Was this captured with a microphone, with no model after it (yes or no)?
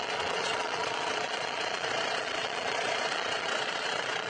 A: no